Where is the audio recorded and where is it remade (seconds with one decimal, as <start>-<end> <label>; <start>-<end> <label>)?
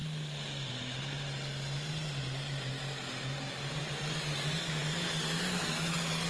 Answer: 0.0-6.3 recorded